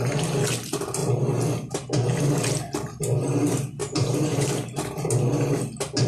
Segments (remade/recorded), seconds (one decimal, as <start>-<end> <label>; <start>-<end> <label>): 0.0-3.8 recorded; 3.8-4.5 remade; 4.5-6.1 recorded